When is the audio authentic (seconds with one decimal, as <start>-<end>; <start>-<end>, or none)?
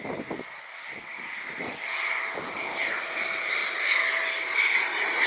0.0-5.3